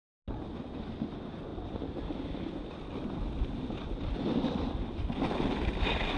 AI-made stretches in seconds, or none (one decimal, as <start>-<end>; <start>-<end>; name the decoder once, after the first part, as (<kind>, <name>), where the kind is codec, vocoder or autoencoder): none